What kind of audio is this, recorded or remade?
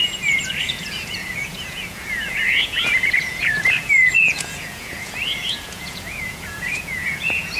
remade